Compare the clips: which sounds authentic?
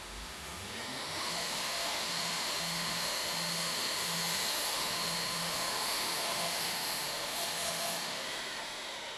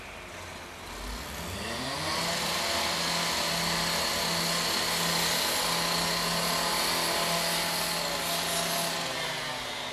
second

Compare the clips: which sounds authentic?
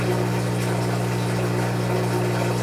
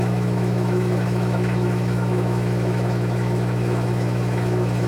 first